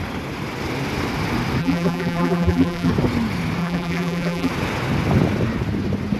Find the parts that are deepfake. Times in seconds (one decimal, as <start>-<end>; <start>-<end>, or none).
1.6-2.9; 3.6-4.5